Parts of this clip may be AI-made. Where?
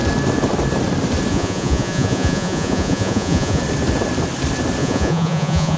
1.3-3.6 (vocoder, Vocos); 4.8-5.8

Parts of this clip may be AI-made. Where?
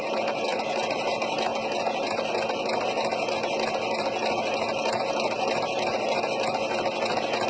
none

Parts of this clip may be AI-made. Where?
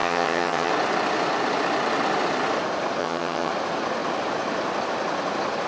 0.0-0.7 (vocoder, HiFi-GAN); 3.0-3.5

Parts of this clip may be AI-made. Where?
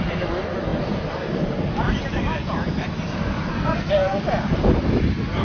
3.5-4.2 (codec, SNAC)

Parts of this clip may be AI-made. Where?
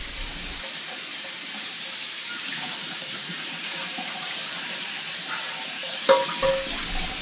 0.0-4.3 (vocoder, BigVGAN v2)